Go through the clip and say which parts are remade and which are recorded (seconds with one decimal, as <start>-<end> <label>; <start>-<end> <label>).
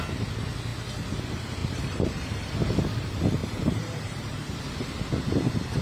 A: 0.0-1.6 recorded; 1.6-2.5 remade; 2.5-3.4 recorded; 3.4-4.6 remade; 4.6-5.8 recorded